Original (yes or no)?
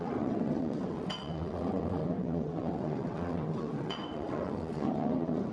no